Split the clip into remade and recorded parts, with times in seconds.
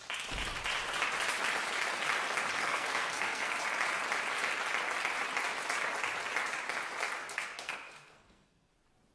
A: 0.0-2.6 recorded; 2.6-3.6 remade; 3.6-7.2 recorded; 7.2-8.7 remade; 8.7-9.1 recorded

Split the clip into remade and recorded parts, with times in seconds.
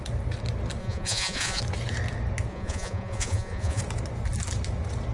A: 0.0-0.8 recorded; 0.8-1.6 remade; 1.6-2.5 recorded; 2.5-3.8 remade; 3.8-5.1 recorded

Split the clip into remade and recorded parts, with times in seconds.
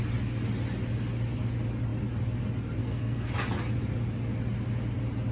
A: 0.0-2.8 recorded; 2.8-3.3 remade; 3.3-5.3 recorded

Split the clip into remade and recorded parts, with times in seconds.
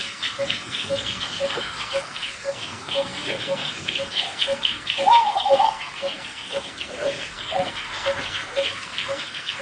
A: 0.0-9.6 remade